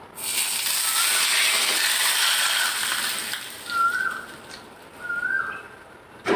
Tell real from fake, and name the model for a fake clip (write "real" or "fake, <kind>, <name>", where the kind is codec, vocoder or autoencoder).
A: real